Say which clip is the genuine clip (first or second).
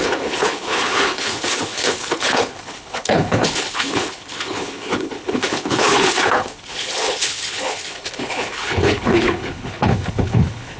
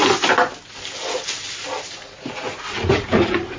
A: second